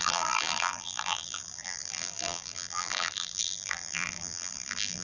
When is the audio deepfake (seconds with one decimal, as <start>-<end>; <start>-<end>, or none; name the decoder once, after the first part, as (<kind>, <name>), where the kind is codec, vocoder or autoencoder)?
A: 0.0-5.0 (vocoder, BigVGAN v2)